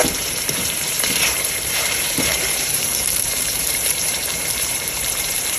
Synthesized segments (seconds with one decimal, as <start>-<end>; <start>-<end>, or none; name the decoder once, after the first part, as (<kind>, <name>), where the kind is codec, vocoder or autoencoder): 0.0-5.6 (vocoder, BigVGAN v2)